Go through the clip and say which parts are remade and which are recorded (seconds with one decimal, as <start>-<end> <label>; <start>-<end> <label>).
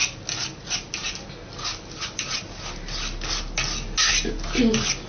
0.0-5.1 recorded